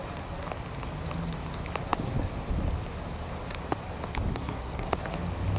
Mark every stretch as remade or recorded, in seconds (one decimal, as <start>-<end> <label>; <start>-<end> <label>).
0.0-4.3 recorded; 4.3-4.9 remade; 4.9-5.6 recorded

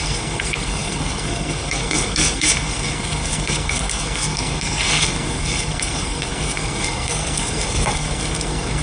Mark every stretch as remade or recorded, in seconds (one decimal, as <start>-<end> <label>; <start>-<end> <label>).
0.0-8.8 remade